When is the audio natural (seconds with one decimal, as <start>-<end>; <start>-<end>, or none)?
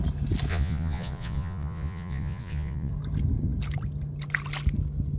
0.0-0.5; 2.9-5.2